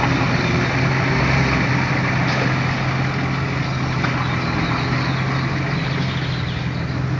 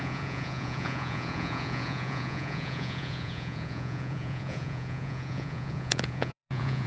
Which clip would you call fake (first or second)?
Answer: second